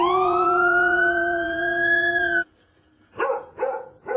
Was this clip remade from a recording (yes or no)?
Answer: yes